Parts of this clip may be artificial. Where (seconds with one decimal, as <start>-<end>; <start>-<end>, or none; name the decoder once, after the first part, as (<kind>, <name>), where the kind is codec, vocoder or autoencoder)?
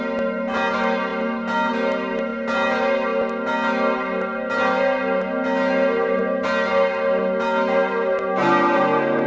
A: none